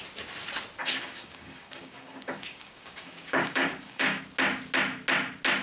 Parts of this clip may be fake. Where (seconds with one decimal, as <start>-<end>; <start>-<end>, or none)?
0.8-4.2